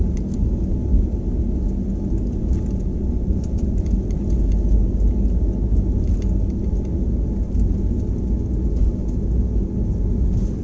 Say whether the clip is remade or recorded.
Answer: recorded